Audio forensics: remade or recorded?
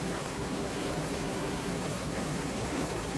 remade